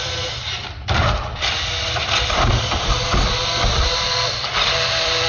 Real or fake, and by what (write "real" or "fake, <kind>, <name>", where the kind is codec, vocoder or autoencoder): fake, vocoder, BigVGAN v2